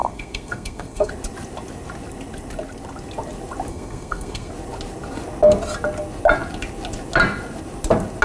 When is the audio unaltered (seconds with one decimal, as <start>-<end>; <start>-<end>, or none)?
1.1-3.7; 4.5-8.2